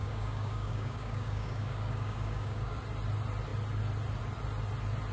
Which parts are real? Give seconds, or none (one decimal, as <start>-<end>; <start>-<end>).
2.8-5.1